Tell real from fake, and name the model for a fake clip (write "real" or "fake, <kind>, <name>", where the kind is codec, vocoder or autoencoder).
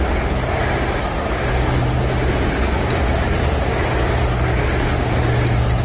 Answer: real